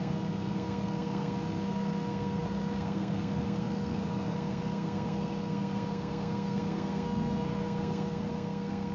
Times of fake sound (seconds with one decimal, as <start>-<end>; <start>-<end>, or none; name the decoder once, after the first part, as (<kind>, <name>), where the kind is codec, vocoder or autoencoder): 0.0-8.9 (codec, SNAC)